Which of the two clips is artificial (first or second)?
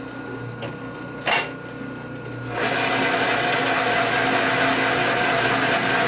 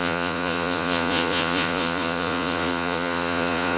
second